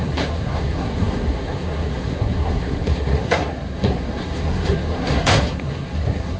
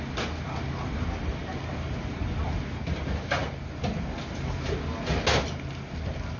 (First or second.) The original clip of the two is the second